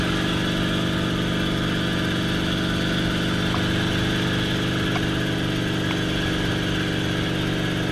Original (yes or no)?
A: yes